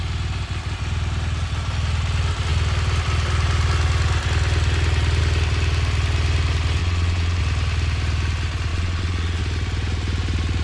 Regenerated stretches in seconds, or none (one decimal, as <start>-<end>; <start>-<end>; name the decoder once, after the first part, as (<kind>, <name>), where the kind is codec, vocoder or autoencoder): 6.8-7.4 (vocoder, Vocos); 8.7-9.4